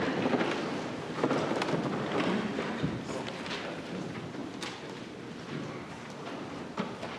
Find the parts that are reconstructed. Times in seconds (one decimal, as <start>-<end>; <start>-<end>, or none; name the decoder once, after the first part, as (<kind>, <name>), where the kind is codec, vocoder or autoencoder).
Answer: 4.4-5.8 (vocoder, BigVGAN v2)